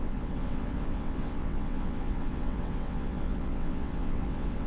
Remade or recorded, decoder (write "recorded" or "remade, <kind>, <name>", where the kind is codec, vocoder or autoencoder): remade, vocoder, WaveNeXt